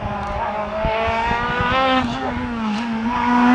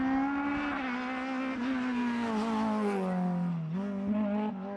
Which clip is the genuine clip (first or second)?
second